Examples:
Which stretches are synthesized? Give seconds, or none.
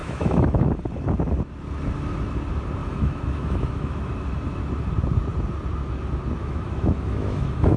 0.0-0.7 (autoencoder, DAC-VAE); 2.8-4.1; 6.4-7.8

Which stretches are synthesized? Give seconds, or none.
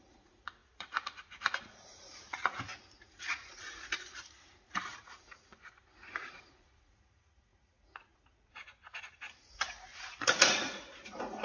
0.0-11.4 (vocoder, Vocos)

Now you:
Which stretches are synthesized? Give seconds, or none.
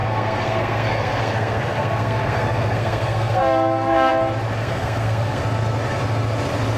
0.0-4.1 (codec, SNAC); 4.6-5.4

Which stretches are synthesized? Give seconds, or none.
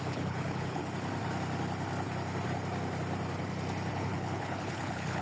0.0-0.8 (codec, HILCodec); 3.9-5.2